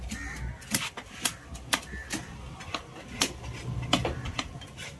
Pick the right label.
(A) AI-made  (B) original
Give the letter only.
B